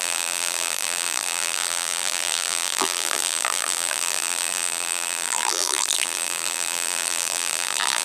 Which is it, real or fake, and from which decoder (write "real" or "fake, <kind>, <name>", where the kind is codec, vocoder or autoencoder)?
fake, vocoder, BigVGAN v2